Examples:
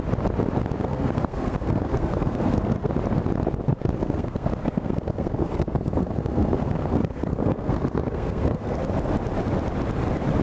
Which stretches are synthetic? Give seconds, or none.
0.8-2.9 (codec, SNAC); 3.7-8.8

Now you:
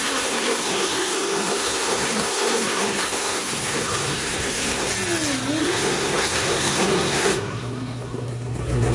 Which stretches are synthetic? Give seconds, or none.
0.0-4.9 (codec, SNAC); 5.6-8.9

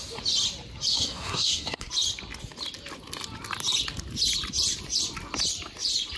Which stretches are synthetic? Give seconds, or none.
0.9-1.9 (codec, SNAC)

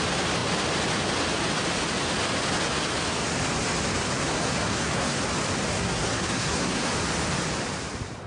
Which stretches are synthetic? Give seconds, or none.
4.2-5.2 (codec, SNAC); 5.7-6.9

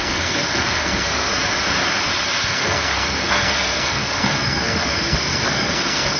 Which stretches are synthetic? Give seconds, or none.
0.0-1.3 (codec, SNAC); 2.5-6.2

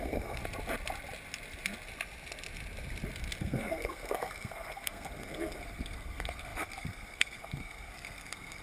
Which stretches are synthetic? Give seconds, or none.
0.0-0.4 (codec, SNAC); 3.4-8.6